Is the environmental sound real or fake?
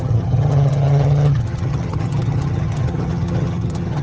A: fake